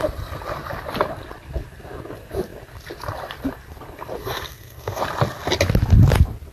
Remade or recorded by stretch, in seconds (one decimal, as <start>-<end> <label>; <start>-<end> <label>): 0.0-4.2 recorded; 4.2-5.0 remade; 5.0-6.5 recorded